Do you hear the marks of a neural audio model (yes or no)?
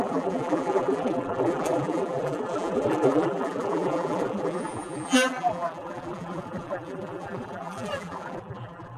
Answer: yes